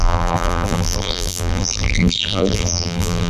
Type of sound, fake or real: fake